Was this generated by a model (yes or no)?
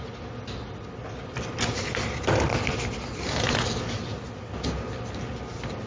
no